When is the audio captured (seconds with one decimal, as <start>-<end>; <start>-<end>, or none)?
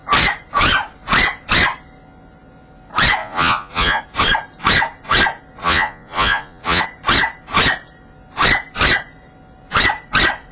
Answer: 0.0-3.2; 4.0-5.6; 6.8-10.5